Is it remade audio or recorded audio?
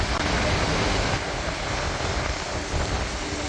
recorded